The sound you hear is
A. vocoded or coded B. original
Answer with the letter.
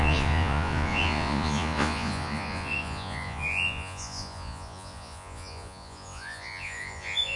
A